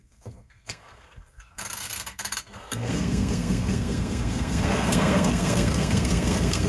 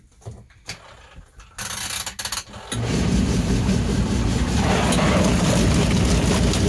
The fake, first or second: first